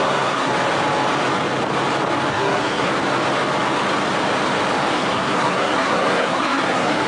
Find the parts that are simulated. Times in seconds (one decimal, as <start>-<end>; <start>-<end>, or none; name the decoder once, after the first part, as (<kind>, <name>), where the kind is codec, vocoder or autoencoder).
0.0-0.5 (codec, SNAC); 2.3-2.9; 4.9-7.1